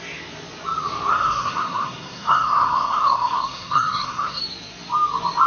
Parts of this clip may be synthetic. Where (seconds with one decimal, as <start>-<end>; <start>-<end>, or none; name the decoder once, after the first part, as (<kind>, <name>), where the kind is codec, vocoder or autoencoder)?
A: 1.1-4.4 (codec, SNAC)